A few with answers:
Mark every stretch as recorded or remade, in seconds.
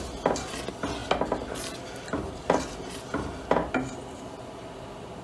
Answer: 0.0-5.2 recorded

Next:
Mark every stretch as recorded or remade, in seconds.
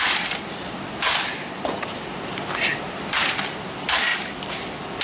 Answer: 0.0-5.0 recorded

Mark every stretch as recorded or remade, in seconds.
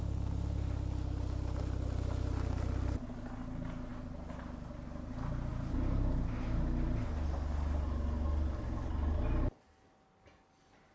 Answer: 0.0-5.5 recorded; 5.5-6.6 remade; 6.6-10.9 recorded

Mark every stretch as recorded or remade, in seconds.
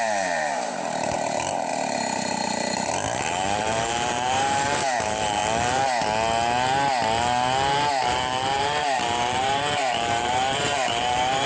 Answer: 0.0-1.7 remade; 1.7-2.3 recorded; 2.3-5.4 remade; 5.4-8.1 recorded; 8.1-11.5 remade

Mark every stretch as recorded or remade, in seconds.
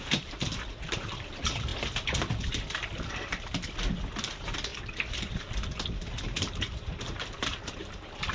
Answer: 0.0-1.7 remade; 1.7-4.3 recorded; 4.3-4.7 remade; 4.7-5.9 recorded; 5.9-8.3 remade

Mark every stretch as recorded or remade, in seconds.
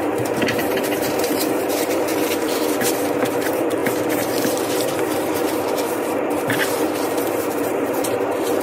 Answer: 0.0-8.6 remade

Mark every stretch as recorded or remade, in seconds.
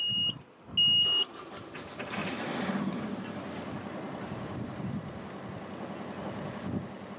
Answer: 0.0-2.2 recorded; 2.2-3.0 remade; 3.0-7.2 recorded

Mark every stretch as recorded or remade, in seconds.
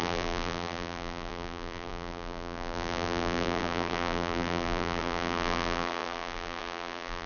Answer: 0.0-7.3 remade